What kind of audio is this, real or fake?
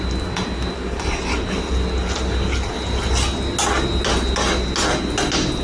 real